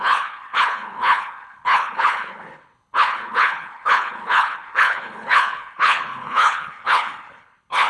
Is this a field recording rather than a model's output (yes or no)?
no